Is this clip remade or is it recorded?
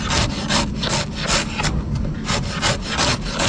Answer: recorded